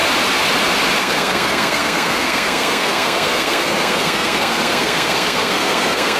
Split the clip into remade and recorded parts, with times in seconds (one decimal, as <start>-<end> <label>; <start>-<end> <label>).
0.0-1.0 recorded; 1.0-6.2 remade